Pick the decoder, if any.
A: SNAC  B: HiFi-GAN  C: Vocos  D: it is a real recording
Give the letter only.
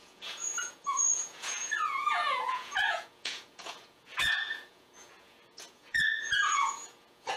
C